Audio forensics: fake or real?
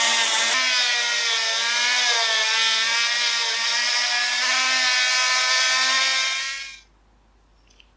real